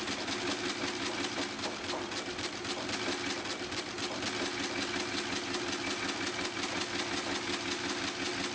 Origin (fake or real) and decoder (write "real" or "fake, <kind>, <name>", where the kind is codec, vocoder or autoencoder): real